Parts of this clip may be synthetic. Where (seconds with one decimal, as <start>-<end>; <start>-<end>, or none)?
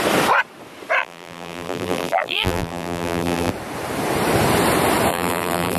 1.0-3.5; 5.1-5.8